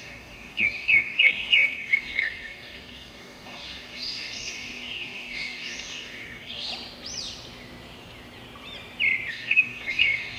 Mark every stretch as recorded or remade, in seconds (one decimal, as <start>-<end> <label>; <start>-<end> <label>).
0.0-6.7 remade; 6.7-9.3 recorded; 9.3-10.4 remade